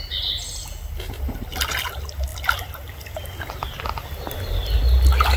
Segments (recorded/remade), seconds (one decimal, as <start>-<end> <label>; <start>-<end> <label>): 0.0-5.4 recorded